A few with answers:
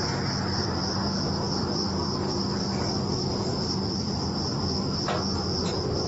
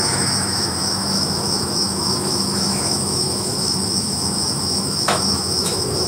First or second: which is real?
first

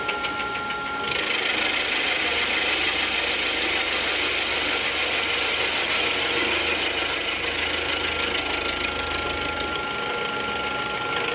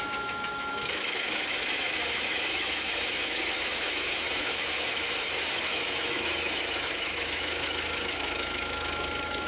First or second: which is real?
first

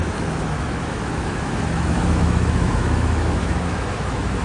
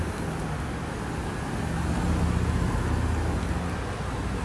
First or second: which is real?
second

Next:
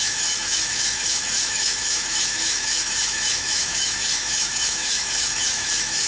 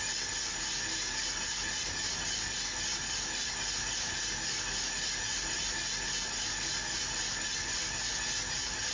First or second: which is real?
second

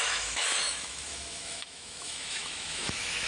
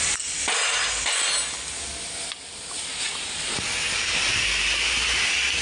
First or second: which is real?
second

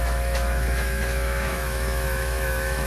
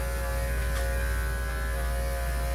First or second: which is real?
second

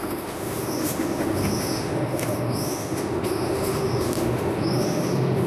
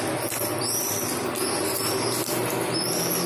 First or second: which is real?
second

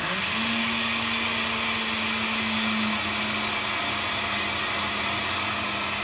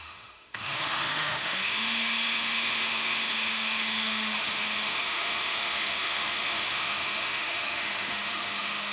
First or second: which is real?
first